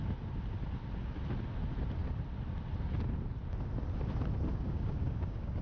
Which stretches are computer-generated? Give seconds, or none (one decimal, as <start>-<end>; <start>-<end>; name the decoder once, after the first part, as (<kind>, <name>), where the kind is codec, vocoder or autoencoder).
4.5-5.6 (codec, DAC)